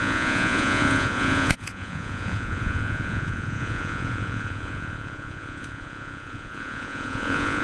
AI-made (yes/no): yes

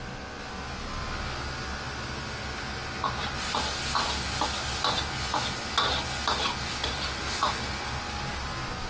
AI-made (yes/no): no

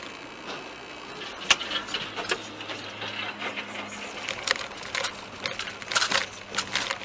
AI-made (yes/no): no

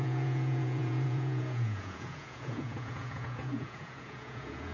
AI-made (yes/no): yes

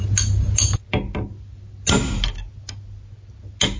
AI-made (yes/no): no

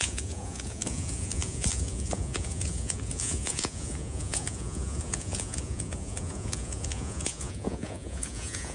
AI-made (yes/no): yes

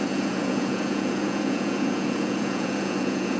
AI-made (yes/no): yes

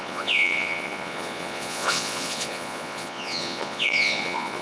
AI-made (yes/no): yes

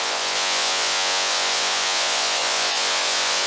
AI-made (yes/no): yes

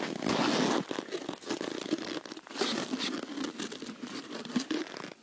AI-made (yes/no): no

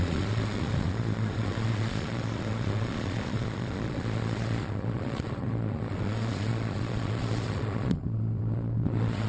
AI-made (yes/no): yes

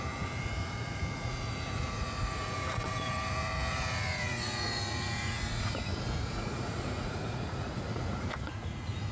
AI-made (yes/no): yes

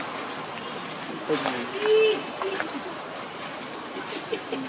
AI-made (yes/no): no